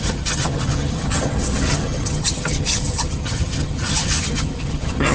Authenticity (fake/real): fake